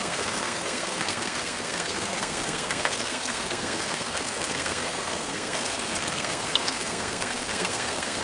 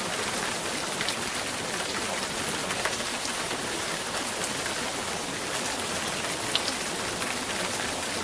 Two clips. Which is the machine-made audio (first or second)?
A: first